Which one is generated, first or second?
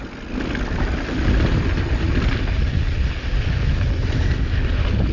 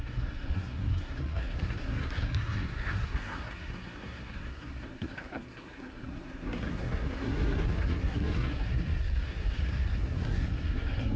second